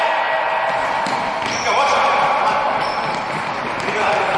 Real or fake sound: real